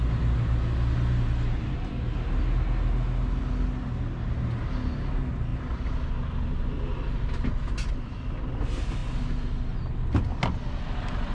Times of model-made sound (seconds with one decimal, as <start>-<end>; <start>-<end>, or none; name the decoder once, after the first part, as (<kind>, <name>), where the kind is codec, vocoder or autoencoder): none